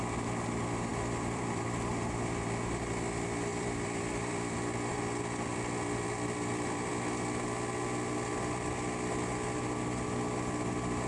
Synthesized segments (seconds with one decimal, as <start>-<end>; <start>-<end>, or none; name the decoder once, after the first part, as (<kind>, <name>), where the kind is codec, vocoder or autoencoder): 0.9-1.9 (vocoder, BigVGAN v2); 3.5-4.5; 4.9-6.9